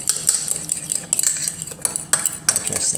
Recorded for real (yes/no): yes